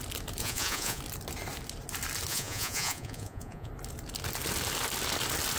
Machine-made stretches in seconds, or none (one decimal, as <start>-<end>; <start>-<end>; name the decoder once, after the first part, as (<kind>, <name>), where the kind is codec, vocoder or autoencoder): 0.4-1.0 (vocoder, Vocos); 2.3-3.7